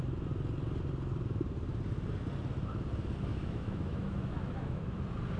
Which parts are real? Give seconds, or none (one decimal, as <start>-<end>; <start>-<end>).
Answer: 0.0-3.3; 5.0-5.4

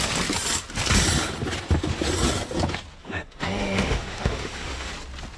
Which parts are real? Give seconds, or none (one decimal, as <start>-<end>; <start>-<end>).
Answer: 0.0-3.0; 4.9-5.4

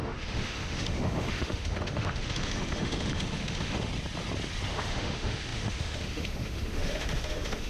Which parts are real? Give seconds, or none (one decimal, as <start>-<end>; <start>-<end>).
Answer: 3.9-4.7

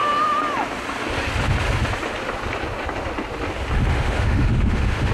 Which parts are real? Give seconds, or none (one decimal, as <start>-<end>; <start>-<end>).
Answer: 0.0-3.9

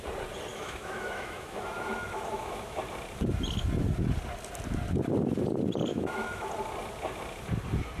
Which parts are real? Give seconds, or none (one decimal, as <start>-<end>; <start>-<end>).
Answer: 0.0-0.5; 2.8-5.9; 6.5-8.0